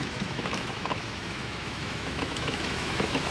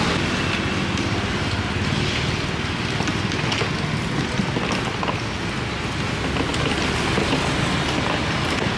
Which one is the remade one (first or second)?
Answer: first